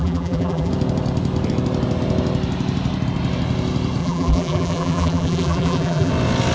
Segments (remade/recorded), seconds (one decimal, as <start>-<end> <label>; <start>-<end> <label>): 0.0-0.7 remade; 0.7-4.0 recorded; 4.0-6.1 remade; 6.1-6.5 recorded